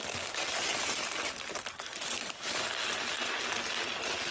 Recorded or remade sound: recorded